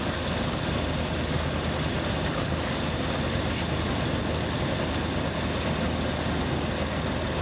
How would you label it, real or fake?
real